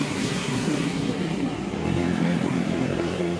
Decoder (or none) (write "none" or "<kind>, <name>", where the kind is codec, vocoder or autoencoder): codec, SNAC